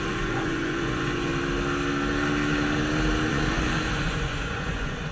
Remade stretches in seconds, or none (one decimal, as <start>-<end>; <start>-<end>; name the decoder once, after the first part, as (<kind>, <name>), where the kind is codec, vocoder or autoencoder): 0.0-1.3 (vocoder, Vocos); 3.3-5.1